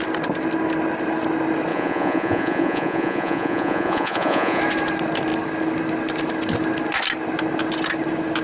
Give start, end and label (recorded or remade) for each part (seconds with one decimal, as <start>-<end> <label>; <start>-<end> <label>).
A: 0.0-1.7 recorded; 1.7-4.6 remade; 4.6-8.4 recorded